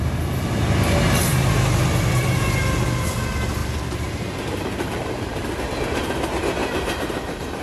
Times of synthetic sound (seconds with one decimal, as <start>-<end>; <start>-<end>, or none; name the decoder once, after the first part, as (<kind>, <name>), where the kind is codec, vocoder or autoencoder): 3.6-5.5 (vocoder, BigVGAN v2); 6.6-7.6